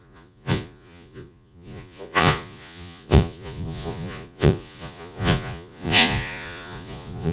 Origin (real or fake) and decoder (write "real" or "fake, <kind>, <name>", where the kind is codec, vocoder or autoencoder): fake, vocoder, Vocos